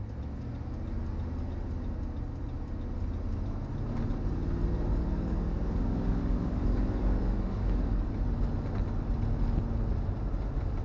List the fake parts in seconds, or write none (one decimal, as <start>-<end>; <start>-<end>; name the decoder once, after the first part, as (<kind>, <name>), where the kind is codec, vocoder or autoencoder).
4.9-8.1 (codec, DAC)

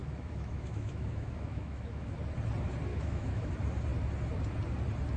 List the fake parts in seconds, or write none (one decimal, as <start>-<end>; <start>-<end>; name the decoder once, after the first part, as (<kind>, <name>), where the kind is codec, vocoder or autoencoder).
0.0-2.1 (autoencoder, DAC-VAE); 2.9-3.5

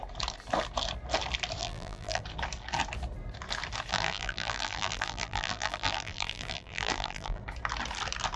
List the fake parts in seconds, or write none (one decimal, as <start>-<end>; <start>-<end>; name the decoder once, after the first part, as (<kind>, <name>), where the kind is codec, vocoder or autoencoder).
1.6-2.2 (vocoder, BigVGAN v2); 3.9-7.4

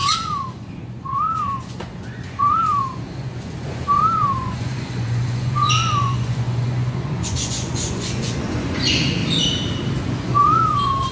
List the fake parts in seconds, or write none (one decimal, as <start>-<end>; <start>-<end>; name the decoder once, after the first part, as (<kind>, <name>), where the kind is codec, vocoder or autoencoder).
0.0-9.2 (vocoder, Vocos); 10.0-11.1

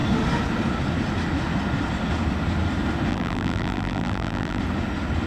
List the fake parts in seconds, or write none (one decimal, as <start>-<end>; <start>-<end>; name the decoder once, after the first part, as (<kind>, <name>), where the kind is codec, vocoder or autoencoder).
3.1-4.6 (vocoder, BigVGAN v2)

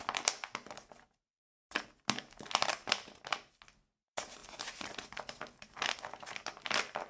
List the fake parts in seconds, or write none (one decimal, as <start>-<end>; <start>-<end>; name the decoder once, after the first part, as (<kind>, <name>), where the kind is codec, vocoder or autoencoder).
none

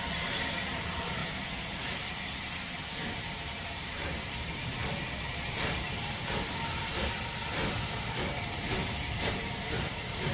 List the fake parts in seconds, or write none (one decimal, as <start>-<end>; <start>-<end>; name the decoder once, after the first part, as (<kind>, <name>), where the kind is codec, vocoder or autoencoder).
0.0-1.2 (vocoder, BigVGAN v2); 3.0-4.8; 5.3-10.3